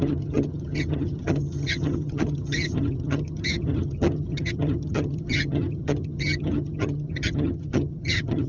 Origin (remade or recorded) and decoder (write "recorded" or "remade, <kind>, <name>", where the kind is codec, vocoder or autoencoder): remade, vocoder, HiFi-GAN